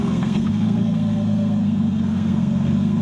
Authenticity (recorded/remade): remade